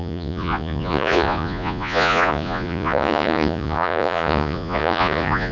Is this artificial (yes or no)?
yes